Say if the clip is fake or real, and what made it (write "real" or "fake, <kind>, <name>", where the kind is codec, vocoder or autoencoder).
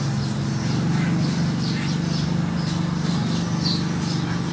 real